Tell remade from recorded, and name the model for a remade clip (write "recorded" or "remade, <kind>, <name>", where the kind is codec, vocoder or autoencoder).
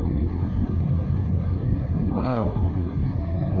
remade, codec, SNAC